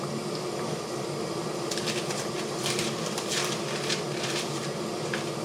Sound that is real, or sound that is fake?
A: real